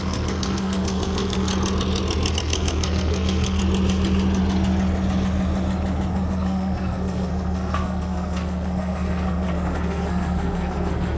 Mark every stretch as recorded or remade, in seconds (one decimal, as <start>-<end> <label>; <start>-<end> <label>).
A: 0.0-1.5 remade; 1.5-2.3 recorded; 2.3-3.6 remade; 3.6-6.1 recorded; 6.1-11.2 remade